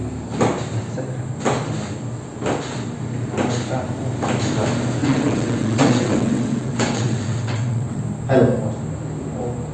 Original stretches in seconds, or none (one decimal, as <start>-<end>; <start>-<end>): 0.0-5.0; 8.0-9.7